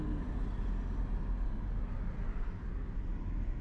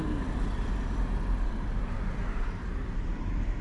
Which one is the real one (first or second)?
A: first